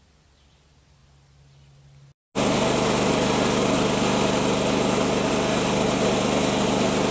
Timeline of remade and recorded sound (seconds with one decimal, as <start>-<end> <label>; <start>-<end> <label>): 0.0-7.1 recorded